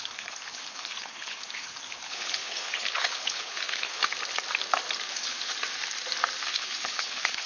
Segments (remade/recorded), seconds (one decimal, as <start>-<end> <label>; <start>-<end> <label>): 0.0-4.0 remade; 4.0-5.1 recorded; 5.1-5.5 remade; 5.5-6.4 recorded; 6.4-7.5 remade